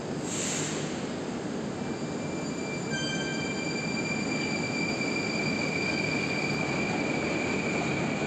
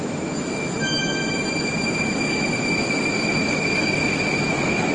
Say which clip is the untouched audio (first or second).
first